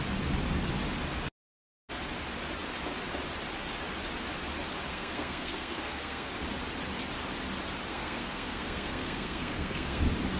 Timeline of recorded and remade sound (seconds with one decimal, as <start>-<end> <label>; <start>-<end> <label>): 0.0-4.9 recorded; 4.9-6.3 remade; 6.3-7.9 recorded; 7.9-10.0 remade; 10.0-10.4 recorded